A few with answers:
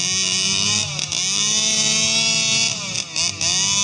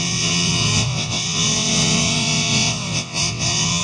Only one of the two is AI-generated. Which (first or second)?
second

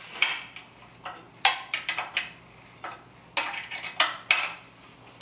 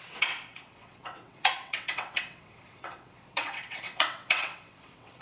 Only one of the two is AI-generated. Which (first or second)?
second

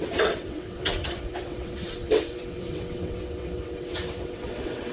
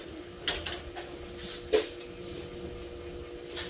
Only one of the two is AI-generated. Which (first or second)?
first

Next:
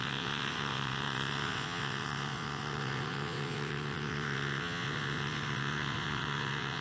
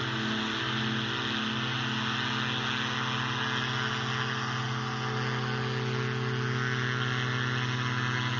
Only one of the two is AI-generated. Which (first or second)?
first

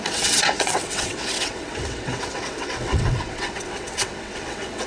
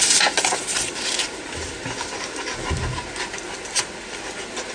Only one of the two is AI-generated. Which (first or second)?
first